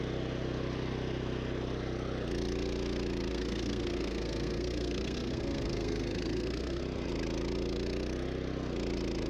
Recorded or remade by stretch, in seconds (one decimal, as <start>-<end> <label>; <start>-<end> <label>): 0.0-3.3 recorded; 3.3-6.8 remade; 6.8-9.3 recorded